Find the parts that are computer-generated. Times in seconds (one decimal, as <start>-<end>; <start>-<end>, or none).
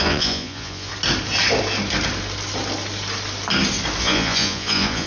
0.0-0.9; 4.0-5.1